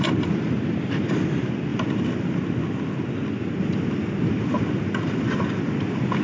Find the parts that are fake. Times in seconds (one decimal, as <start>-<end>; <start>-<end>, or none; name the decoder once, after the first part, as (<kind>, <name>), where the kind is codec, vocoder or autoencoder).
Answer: none